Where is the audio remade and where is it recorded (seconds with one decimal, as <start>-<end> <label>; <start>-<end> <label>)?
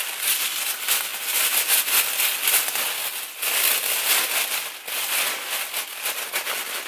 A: 0.0-6.9 recorded